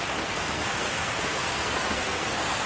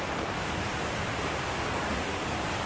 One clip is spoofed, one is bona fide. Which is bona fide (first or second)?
second